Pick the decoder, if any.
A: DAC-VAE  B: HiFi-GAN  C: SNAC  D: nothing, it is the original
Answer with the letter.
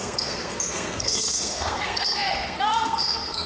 C